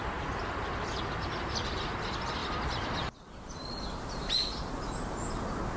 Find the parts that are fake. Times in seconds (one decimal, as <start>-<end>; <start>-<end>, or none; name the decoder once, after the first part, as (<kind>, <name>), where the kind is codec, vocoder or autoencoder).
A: 2.4-4.6 (vocoder, BigVGAN v2)